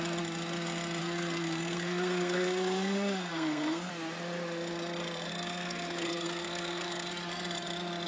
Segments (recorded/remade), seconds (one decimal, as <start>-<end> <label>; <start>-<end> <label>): 0.0-1.0 recorded; 1.0-3.9 remade; 3.9-5.3 recorded; 5.3-7.1 remade; 7.1-8.1 recorded